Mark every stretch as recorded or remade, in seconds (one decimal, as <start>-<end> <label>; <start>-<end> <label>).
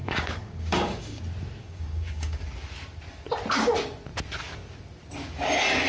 0.0-1.2 remade; 1.2-1.6 recorded; 1.6-2.4 remade; 2.4-5.9 recorded